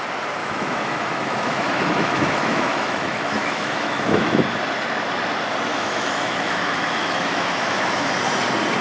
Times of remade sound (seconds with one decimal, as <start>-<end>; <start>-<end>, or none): 0.4-4.6; 5.7-8.1